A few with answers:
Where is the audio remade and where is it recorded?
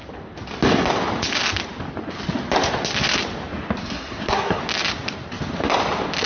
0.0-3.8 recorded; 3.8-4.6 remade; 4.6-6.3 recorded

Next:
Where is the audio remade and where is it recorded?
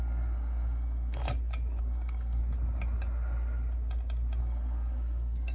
0.0-1.2 remade; 1.2-1.8 recorded; 1.8-2.4 remade; 2.4-4.4 recorded; 4.4-5.5 remade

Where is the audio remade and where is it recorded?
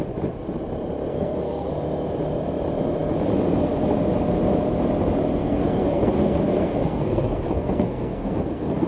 0.0-1.1 recorded; 1.1-1.7 remade; 1.7-5.4 recorded; 5.4-8.9 remade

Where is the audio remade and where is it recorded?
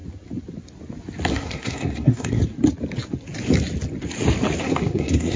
0.0-1.3 recorded; 1.3-2.4 remade; 2.4-4.6 recorded; 4.6-5.4 remade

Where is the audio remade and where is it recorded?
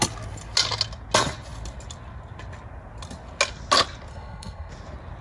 0.0-4.1 recorded; 4.1-4.7 remade; 4.7-5.2 recorded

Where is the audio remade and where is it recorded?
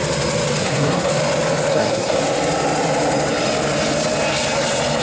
0.0-0.6 recorded; 0.6-1.1 remade; 1.1-1.7 recorded; 1.7-2.2 remade; 2.2-5.0 recorded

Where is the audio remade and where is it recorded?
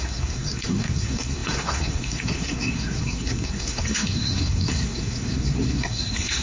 0.0-6.4 remade